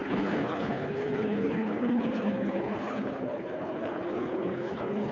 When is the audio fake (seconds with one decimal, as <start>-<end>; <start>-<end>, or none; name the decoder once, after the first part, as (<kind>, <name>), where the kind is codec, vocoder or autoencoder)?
0.0-5.1 (codec, HILCodec)